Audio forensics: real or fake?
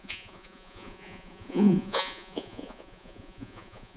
fake